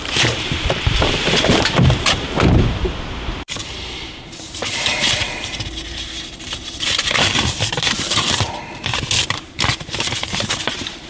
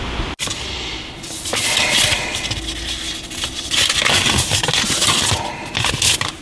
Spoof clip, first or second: first